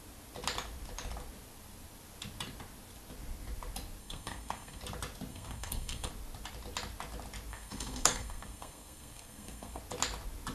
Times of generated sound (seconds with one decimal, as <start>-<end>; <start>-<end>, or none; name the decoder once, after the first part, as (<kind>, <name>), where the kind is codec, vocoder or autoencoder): 4.0-4.8 (codec, SNAC); 5.3-6.1; 7.5-9.8